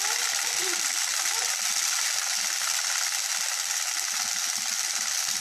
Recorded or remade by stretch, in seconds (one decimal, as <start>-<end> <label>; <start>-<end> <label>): 0.0-5.4 recorded